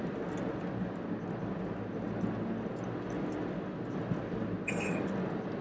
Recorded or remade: recorded